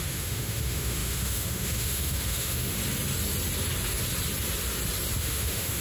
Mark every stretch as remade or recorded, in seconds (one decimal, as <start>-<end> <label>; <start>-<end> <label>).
0.0-2.8 remade; 2.8-5.2 recorded; 5.2-5.8 remade